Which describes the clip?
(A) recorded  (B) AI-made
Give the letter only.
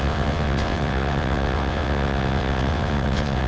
B